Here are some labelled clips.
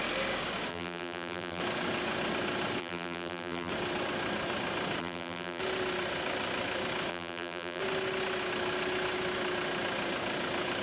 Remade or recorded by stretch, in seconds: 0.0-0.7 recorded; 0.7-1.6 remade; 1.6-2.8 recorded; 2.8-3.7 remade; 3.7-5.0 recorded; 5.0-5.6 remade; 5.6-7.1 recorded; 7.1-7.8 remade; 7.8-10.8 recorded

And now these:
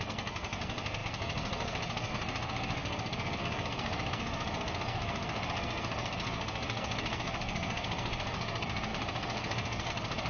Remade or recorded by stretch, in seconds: 0.0-10.3 remade

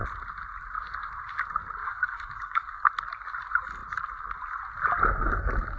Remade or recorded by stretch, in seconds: 0.0-1.8 recorded; 1.8-2.9 remade; 2.9-5.8 recorded

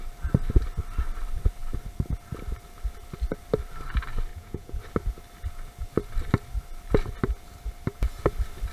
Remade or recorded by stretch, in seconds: 0.0-4.3 recorded; 4.3-4.8 remade; 4.8-8.7 recorded

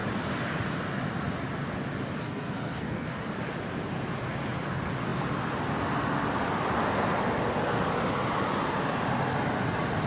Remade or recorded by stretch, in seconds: 0.0-2.2 recorded; 2.2-3.3 remade; 3.3-10.1 recorded